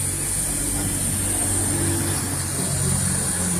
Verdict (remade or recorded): recorded